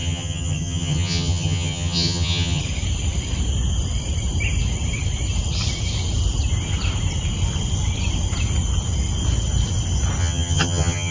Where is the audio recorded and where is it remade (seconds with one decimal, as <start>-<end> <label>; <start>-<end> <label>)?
0.0-2.6 remade; 2.6-10.2 recorded; 10.2-11.1 remade